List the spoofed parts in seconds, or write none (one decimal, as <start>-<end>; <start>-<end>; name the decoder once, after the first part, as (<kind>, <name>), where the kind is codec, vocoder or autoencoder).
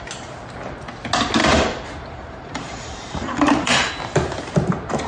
1.4-3.9 (vocoder, BigVGAN v2)